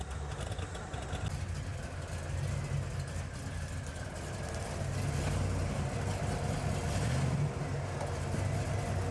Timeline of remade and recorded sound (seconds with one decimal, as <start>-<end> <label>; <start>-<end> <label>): 0.0-9.1 recorded